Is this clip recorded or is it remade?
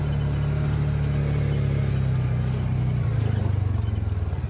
recorded